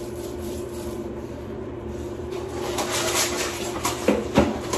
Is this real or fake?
fake